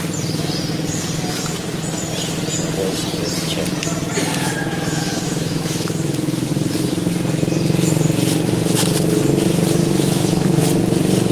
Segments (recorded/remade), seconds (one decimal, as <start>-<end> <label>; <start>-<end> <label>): 0.0-4.7 recorded; 4.7-6.9 remade; 6.9-9.8 recorded; 9.8-10.6 remade; 10.6-11.3 recorded